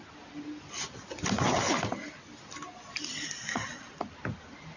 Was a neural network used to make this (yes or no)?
no